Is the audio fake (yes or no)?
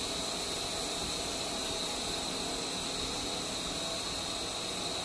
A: no